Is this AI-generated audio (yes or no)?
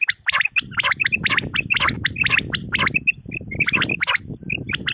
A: no